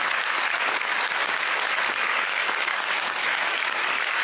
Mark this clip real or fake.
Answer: fake